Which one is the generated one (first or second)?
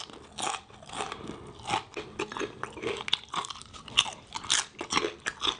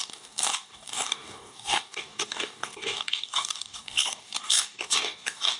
second